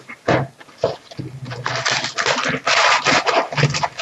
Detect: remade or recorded recorded